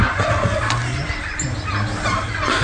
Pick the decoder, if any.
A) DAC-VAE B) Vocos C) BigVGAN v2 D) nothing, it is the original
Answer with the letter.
D